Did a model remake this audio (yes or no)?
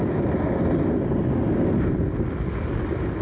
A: no